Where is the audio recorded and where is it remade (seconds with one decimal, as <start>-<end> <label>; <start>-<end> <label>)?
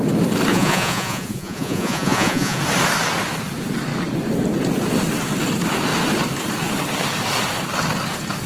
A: 0.0-0.5 recorded; 0.5-2.6 remade; 2.6-8.5 recorded